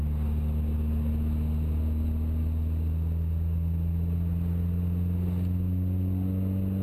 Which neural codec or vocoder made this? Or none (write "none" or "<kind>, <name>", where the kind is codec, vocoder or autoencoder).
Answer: none